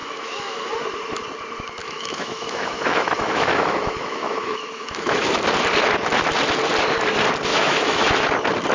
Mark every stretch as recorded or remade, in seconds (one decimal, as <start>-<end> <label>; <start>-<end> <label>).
0.0-0.7 remade; 0.7-1.8 recorded; 1.8-5.3 remade; 5.3-7.5 recorded; 7.5-8.1 remade; 8.1-8.7 recorded